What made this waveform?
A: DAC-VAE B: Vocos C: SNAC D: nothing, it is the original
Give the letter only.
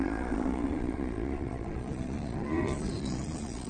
B